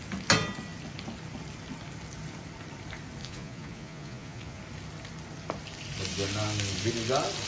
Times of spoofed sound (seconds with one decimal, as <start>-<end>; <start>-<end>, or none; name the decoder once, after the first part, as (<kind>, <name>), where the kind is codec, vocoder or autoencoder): 3.2-4.6 (vocoder, Vocos)